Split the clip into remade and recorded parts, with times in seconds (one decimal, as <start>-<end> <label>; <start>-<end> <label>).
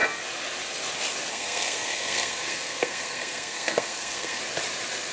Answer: 0.0-1.3 recorded; 1.3-4.4 remade; 4.4-5.1 recorded